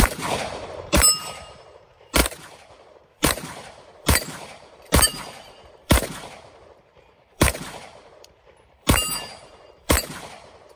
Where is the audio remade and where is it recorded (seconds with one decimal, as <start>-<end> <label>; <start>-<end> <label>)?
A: 0.0-10.8 remade

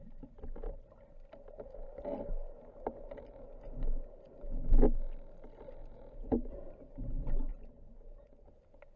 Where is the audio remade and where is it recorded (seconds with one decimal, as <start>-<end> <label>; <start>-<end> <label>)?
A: 0.0-5.8 recorded; 5.8-6.7 remade; 6.7-7.5 recorded; 7.5-8.5 remade; 8.5-9.0 recorded

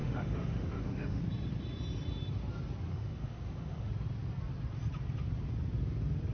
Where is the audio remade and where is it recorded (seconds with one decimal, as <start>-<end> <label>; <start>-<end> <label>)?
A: 0.0-1.2 remade; 1.2-2.9 recorded; 2.9-3.9 remade; 3.9-6.3 recorded